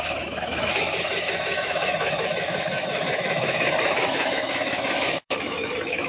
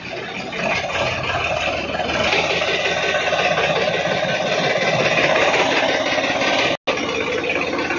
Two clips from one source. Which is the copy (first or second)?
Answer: first